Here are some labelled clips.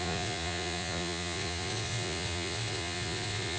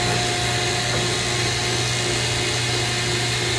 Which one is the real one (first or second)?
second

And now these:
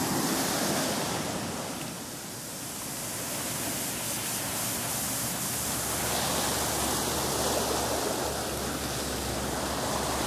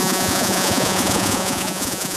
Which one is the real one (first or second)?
first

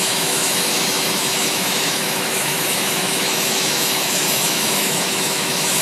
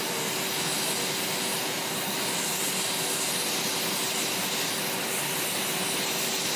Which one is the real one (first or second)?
second